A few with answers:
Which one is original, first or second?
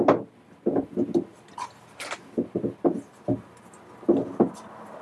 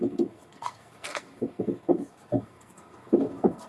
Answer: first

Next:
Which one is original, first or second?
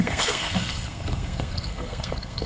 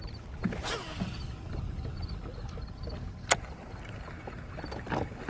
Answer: second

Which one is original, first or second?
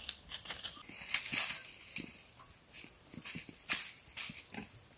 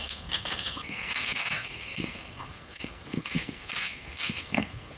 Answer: first